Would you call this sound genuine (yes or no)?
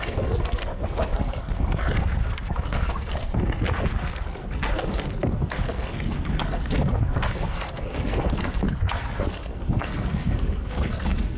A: no